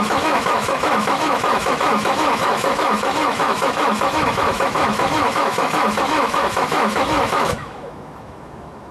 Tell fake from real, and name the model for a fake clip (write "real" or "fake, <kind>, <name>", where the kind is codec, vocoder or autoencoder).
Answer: fake, autoencoder, DAC-VAE